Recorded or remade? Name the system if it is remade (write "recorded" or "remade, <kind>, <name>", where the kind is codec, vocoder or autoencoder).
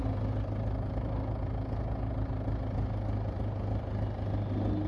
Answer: recorded